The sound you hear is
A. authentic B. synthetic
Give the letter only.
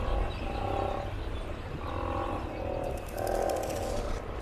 A